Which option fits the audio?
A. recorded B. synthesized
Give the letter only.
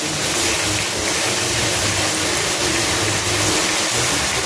A